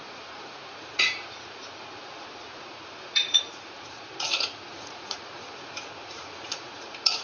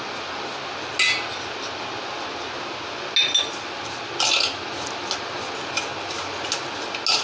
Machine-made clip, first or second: first